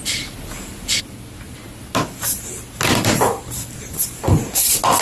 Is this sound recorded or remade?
recorded